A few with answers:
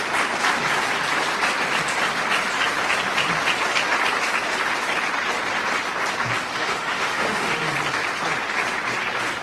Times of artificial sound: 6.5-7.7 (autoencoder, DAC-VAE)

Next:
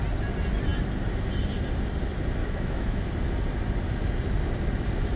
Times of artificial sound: 2.4-3.0 (autoencoder, DAC-VAE)

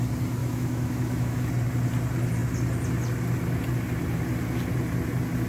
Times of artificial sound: 0.4-1.5 (autoencoder, DAC-VAE)

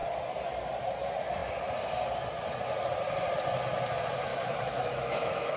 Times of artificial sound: 4.3-5.6 (autoencoder, DAC-VAE)

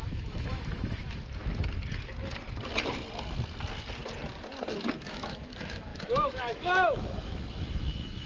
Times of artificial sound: 0.0-1.2 (autoencoder, DAC-VAE); 5.0-8.3

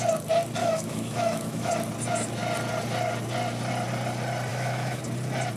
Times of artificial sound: 0.6-1.7 (autoencoder, DAC-VAE); 4.5-5.0

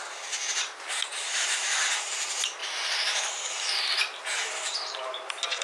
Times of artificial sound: 1.2-1.8 (autoencoder, DAC-VAE)

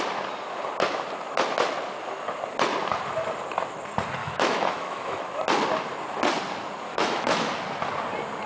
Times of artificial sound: 4.2-5.4 (autoencoder, DAC-VAE); 6.9-7.5